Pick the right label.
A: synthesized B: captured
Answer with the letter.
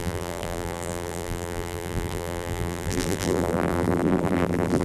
A